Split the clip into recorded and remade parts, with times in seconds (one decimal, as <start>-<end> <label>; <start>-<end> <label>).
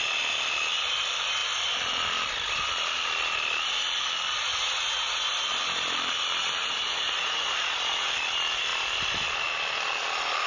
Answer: 0.0-4.6 recorded; 4.6-5.3 remade; 5.3-6.4 recorded; 6.4-8.1 remade; 8.1-10.5 recorded